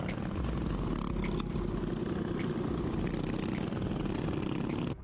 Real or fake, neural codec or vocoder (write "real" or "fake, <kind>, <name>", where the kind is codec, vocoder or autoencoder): real